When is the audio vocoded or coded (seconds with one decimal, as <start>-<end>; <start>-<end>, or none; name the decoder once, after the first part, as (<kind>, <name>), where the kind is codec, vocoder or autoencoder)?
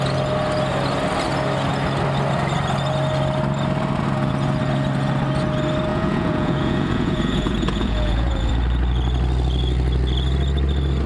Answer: 5.9-8.5 (vocoder, Vocos)